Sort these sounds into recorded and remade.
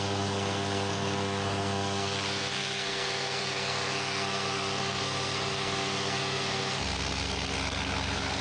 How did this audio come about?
remade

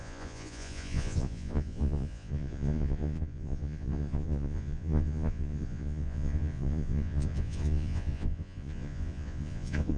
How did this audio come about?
remade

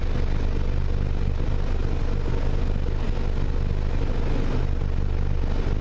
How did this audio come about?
recorded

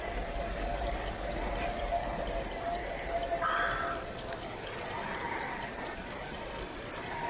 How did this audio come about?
recorded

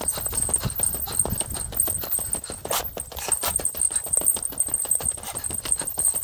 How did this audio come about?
recorded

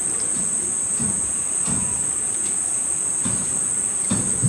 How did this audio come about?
recorded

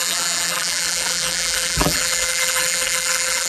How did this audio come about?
remade